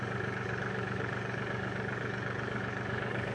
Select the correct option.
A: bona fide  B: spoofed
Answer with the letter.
B